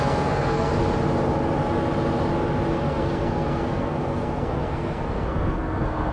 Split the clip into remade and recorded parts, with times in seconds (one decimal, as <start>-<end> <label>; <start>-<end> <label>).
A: 0.0-0.7 remade; 0.7-2.7 recorded; 2.7-6.1 remade